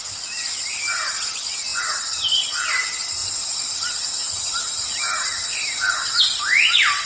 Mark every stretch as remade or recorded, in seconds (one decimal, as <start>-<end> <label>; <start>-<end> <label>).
0.0-7.1 recorded